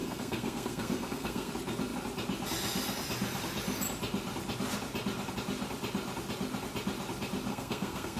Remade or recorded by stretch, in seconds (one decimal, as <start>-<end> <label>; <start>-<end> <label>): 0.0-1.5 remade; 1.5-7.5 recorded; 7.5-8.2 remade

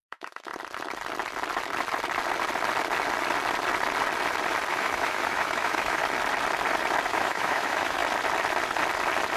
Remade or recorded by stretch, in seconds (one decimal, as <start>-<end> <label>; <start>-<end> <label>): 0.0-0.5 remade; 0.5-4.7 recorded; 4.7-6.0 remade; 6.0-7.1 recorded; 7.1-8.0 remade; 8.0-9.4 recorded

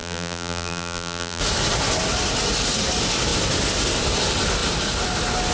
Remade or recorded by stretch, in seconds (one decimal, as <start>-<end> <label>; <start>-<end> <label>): 0.0-1.4 remade; 1.4-5.5 recorded

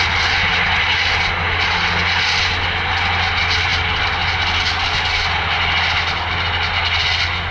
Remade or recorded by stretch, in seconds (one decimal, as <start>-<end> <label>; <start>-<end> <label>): 0.0-7.5 recorded

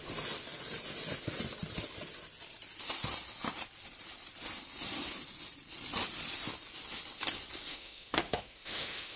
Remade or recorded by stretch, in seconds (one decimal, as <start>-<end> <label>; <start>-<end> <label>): 0.0-7.7 recorded; 7.7-9.2 remade

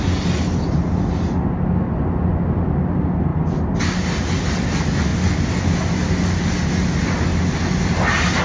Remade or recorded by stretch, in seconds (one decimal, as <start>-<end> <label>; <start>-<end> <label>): 0.0-8.4 recorded

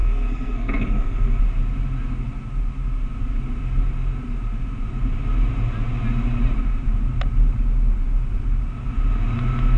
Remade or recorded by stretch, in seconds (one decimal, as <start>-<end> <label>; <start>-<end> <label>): 0.0-1.4 remade; 1.4-9.8 recorded